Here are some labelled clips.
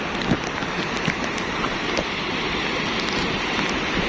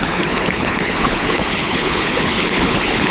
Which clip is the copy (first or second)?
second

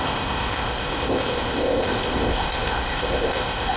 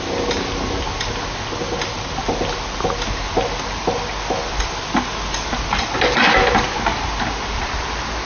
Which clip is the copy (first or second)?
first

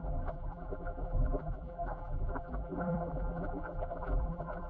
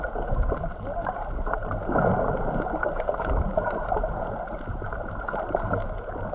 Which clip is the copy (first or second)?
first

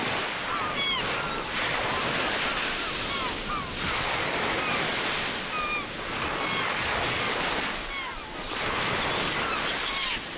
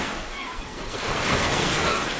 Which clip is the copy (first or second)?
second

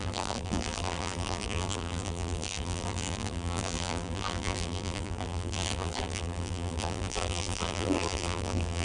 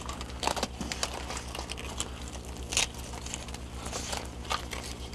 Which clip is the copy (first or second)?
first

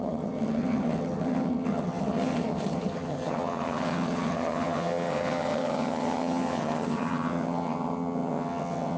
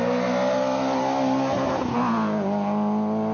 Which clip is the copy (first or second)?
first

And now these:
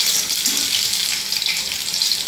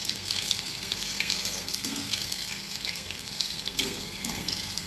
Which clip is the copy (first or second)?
second